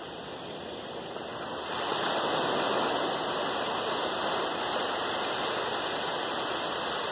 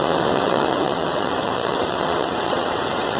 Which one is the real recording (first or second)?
first